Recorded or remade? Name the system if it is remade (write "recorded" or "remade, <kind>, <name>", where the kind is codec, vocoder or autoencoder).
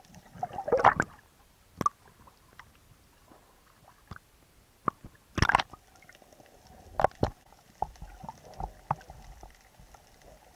recorded